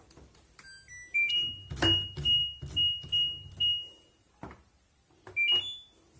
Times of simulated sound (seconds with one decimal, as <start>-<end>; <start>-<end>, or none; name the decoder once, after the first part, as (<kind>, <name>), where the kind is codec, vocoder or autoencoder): none